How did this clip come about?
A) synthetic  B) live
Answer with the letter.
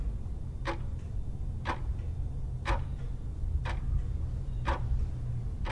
B